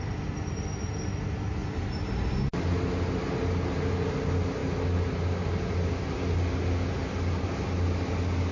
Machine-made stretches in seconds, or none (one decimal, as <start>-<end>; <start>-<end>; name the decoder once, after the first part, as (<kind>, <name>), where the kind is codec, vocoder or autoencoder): none